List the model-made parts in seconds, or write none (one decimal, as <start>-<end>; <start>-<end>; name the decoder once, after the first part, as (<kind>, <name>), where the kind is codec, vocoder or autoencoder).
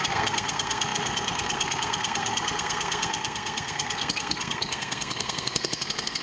0.0-6.2 (codec, SNAC)